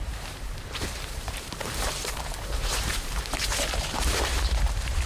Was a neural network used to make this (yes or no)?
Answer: yes